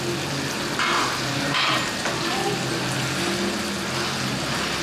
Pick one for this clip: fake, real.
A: real